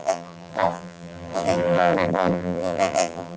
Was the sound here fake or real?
fake